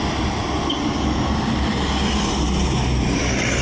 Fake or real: real